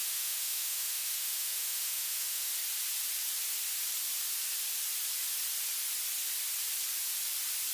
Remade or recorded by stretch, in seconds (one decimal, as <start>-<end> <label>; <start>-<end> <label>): 0.0-2.5 remade; 2.5-7.7 recorded